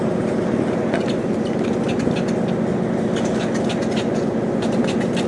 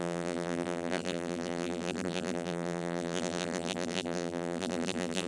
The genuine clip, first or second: first